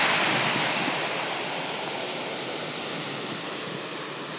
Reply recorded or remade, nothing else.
recorded